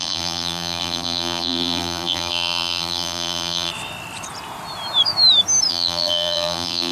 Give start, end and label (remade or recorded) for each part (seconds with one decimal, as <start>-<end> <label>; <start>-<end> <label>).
0.0-3.7 remade; 3.7-5.7 recorded; 5.7-6.9 remade